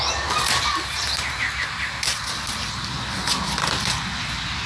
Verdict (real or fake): real